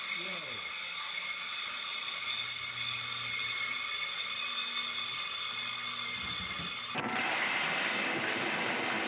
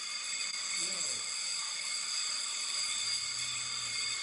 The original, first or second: first